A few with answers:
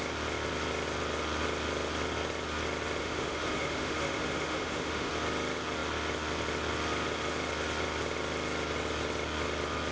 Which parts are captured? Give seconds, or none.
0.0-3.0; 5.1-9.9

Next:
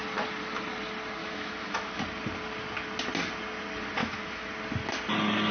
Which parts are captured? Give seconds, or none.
0.0-1.2; 2.0-4.0; 4.5-5.5

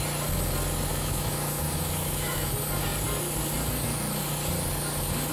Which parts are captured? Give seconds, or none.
0.0-0.9; 2.5-5.3

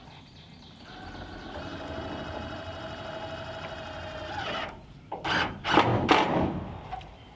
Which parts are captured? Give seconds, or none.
0.0-7.4

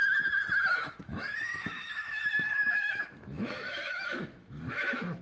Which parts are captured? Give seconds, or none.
0.0-0.6

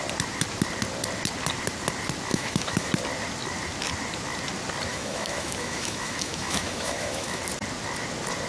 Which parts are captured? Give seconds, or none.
0.0-2.3; 2.9-4.9; 7.4-8.5

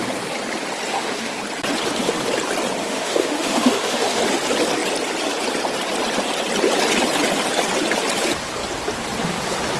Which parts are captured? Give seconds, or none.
0.0-0.9; 1.4-2.8; 4.2-9.8

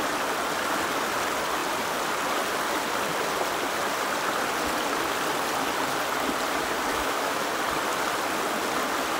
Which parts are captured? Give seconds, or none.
0.0-6.9; 7.4-9.2